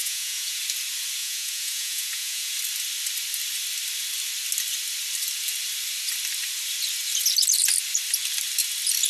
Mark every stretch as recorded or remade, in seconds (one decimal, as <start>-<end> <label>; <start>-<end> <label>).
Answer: 0.0-0.6 remade; 0.6-1.2 recorded; 1.2-2.5 remade; 2.5-9.1 recorded